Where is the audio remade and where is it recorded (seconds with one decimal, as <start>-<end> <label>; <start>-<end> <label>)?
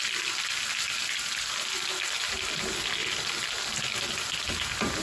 0.0-5.0 recorded